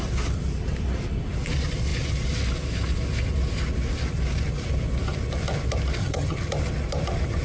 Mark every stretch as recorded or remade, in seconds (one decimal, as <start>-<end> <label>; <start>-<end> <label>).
0.0-6.0 recorded; 6.0-6.5 remade; 6.5-7.4 recorded

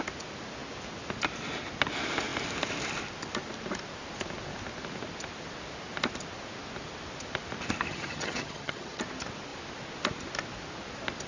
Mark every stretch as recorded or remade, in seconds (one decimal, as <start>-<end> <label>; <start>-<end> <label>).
0.0-7.9 recorded; 7.9-9.0 remade; 9.0-11.3 recorded

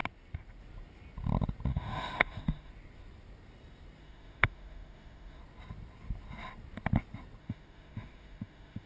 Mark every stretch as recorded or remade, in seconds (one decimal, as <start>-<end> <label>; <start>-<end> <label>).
0.0-1.7 recorded; 1.7-2.7 remade; 2.7-4.0 recorded; 4.0-5.4 remade; 5.4-7.4 recorded; 7.4-8.9 remade

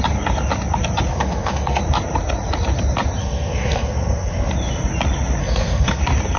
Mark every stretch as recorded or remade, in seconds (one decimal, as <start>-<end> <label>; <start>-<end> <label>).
0.0-1.1 recorded; 1.1-1.8 remade; 1.8-3.2 recorded; 3.2-4.5 remade; 4.5-5.4 recorded; 5.4-6.0 remade; 6.0-6.4 recorded

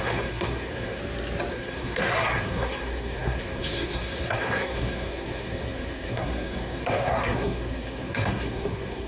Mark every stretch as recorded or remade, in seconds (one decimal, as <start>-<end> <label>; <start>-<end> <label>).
0.0-1.0 remade; 1.0-1.5 recorded; 1.5-9.1 remade